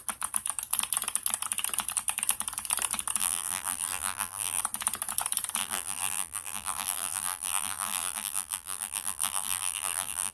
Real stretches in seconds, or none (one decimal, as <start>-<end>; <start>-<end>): 0.0-3.2; 4.6-5.6